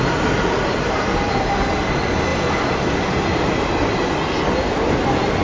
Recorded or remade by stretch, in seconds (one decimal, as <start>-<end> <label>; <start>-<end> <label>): 0.0-5.4 recorded